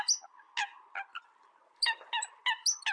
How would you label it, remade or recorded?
recorded